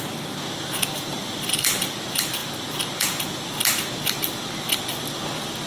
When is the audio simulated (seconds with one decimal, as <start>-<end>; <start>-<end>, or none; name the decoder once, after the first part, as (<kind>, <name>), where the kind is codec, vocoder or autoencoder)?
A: none